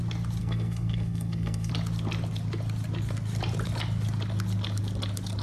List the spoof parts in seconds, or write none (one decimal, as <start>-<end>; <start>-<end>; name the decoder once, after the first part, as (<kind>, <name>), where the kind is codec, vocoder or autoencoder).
0.4-1.7 (codec, SNAC)